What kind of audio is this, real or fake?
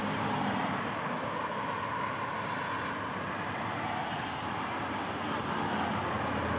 real